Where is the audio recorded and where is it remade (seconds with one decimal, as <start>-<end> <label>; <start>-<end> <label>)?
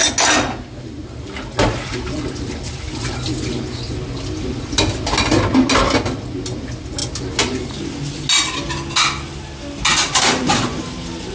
0.0-9.9 recorded; 9.9-10.6 remade; 10.6-11.3 recorded